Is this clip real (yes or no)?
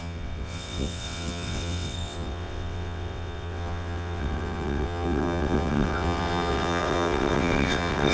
no